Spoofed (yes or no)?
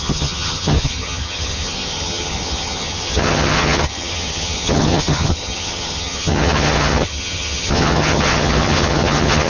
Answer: yes